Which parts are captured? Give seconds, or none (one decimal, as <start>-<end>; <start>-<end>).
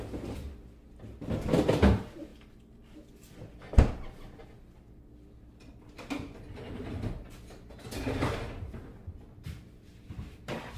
0.0-10.8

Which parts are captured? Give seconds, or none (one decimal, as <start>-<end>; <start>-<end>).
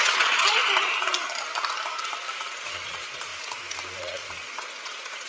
0.6-2.5; 3.3-4.0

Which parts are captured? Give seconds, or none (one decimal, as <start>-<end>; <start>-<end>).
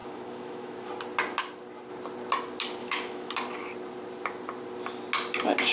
0.9-2.8; 3.3-5.7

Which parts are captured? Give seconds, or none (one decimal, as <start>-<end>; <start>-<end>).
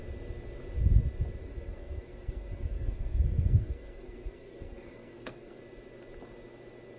0.0-1.4; 5.6-7.0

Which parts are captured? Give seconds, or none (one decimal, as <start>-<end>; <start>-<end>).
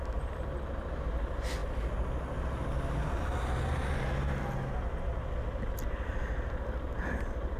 0.0-7.6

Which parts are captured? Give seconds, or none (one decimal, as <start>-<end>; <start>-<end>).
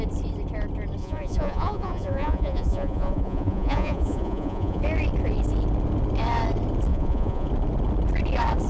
0.0-1.0; 4.8-6.9; 7.5-8.7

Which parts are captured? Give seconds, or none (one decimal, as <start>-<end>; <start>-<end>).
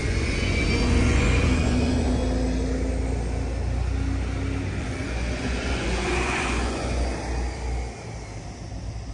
2.2-4.8; 7.1-9.1